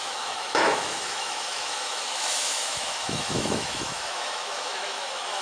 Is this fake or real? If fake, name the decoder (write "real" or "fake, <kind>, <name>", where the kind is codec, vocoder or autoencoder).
fake, autoencoder, DAC-VAE